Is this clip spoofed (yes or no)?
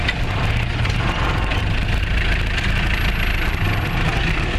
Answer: yes